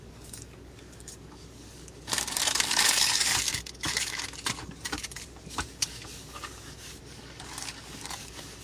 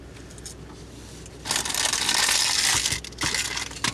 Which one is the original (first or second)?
second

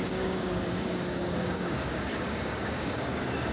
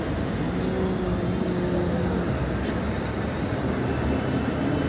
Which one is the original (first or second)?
second